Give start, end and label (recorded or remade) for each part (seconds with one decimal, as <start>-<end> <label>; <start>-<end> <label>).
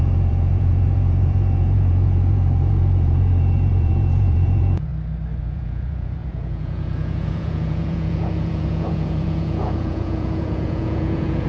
0.0-4.9 remade; 4.9-5.4 recorded; 5.4-11.5 remade